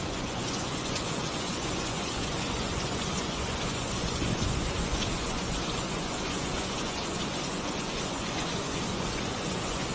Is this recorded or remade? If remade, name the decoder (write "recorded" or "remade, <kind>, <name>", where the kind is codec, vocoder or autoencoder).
remade, vocoder, Vocos